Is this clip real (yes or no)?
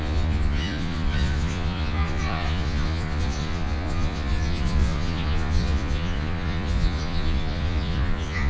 no